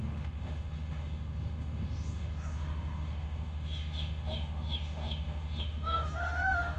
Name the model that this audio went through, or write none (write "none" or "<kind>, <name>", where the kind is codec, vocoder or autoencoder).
autoencoder, DAC-VAE